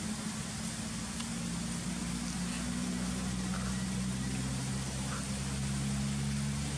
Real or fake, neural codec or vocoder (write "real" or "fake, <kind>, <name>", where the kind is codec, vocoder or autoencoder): real